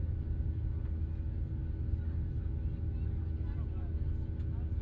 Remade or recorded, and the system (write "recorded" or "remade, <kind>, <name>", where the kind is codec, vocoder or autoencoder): recorded